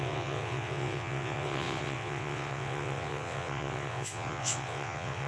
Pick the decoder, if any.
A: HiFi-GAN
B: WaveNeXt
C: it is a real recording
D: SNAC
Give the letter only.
B